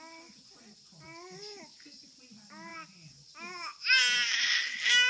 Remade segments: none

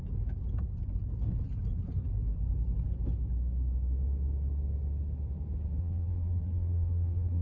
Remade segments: 5.8-7.4 (vocoder, BigVGAN v2)

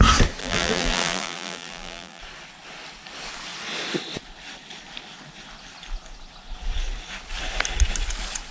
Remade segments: 0.4-2.2 (vocoder, BigVGAN v2)

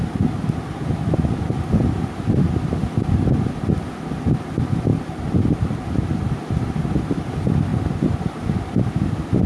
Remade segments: 7.7-9.5 (vocoder, BigVGAN v2)

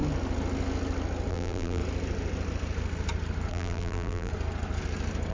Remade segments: 1.3-1.8 (vocoder, BigVGAN v2); 3.5-4.3